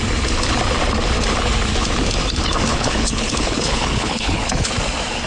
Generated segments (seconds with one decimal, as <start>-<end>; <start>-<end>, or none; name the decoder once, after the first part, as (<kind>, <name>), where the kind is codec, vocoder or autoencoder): 2.7-4.7 (codec, HILCodec)